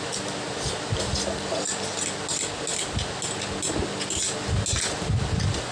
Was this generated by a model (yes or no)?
no